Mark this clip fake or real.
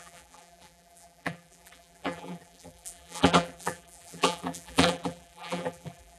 fake